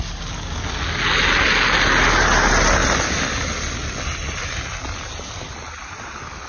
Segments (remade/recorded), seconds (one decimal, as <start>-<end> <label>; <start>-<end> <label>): 0.0-6.5 recorded